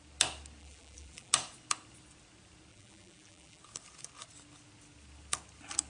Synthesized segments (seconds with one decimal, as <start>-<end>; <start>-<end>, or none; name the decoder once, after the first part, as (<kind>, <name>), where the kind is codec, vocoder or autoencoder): 0.6-1.3 (vocoder, BigVGAN v2); 2.7-3.6